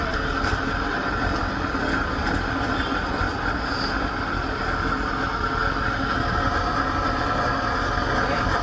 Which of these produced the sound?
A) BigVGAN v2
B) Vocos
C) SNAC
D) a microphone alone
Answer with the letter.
D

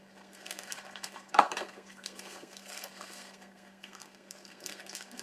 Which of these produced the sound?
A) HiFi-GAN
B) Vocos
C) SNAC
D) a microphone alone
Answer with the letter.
C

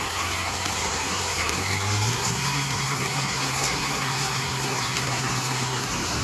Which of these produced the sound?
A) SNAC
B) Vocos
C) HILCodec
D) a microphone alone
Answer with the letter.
A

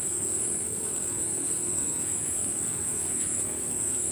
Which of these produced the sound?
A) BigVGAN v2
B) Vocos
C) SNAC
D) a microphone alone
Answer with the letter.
C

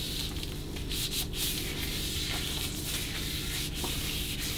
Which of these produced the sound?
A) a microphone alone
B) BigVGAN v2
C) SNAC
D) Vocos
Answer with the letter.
A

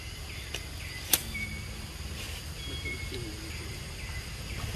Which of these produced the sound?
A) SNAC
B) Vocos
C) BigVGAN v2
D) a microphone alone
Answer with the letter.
D